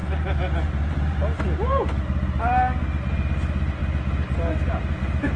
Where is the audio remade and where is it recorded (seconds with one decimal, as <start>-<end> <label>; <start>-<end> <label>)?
0.0-5.4 recorded